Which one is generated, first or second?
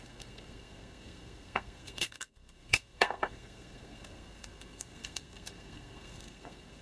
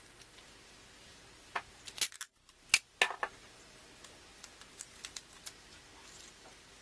first